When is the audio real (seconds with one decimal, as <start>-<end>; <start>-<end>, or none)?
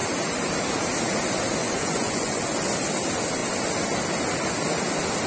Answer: 0.0-1.6; 2.4-5.3